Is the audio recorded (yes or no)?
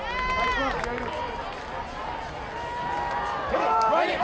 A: yes